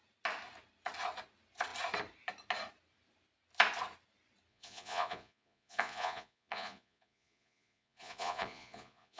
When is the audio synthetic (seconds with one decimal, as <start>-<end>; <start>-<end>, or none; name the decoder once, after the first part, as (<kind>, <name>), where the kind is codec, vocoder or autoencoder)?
4.5-9.2 (vocoder, Vocos)